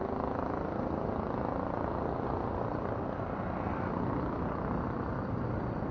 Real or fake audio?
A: fake